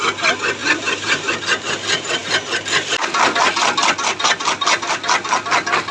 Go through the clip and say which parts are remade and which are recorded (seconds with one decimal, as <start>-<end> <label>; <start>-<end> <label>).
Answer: 0.0-0.6 recorded; 0.6-1.4 remade; 1.4-5.9 recorded